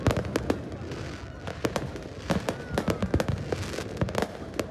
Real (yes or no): yes